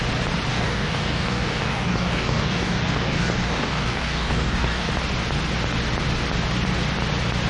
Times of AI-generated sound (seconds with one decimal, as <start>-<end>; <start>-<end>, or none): 0.5-4.9